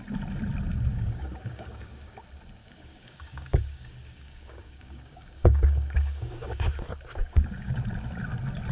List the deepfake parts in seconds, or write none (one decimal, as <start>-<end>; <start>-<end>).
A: 0.9-2.2; 2.6-6.7; 7.2-7.7